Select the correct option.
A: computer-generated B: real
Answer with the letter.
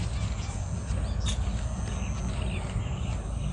B